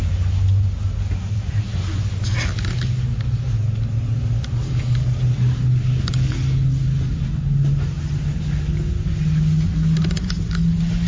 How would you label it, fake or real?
real